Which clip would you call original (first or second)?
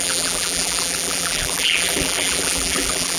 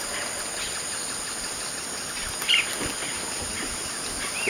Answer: second